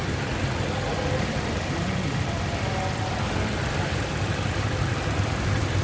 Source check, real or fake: fake